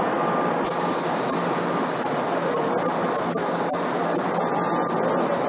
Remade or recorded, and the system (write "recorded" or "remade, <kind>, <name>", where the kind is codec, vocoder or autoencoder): recorded